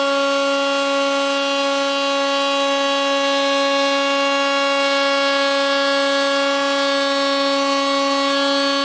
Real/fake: real